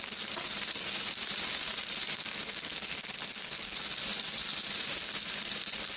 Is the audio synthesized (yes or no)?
no